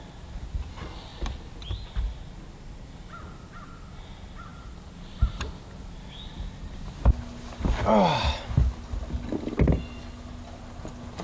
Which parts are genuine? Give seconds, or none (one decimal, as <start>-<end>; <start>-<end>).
0.0-11.2

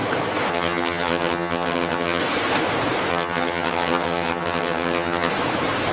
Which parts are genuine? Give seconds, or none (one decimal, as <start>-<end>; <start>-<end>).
0.0-0.5; 2.2-3.1; 5.3-5.9

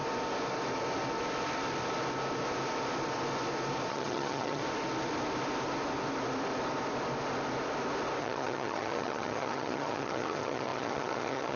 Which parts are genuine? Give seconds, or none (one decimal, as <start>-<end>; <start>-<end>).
0.0-3.9; 4.6-8.2

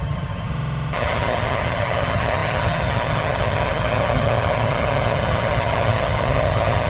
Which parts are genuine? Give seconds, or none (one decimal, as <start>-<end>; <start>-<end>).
none

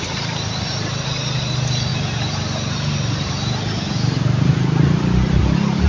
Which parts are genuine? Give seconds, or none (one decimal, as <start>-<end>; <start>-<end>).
0.0-5.9

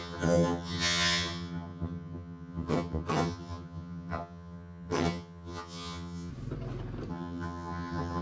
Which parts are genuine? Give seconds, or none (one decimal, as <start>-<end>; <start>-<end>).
6.3-7.1

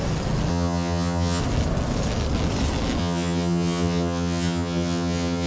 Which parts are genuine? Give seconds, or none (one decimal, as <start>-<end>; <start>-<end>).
0.0-0.5; 1.4-3.0